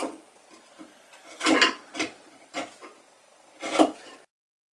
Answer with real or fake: real